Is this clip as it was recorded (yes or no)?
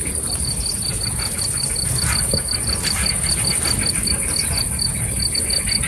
yes